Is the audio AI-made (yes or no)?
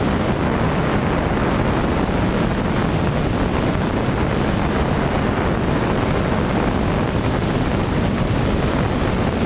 no